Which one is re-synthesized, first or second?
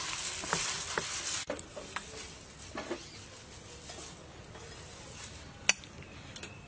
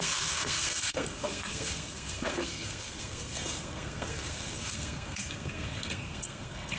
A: second